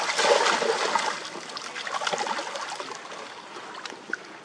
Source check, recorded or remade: recorded